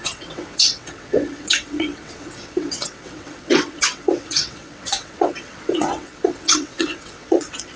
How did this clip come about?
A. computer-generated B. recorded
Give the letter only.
A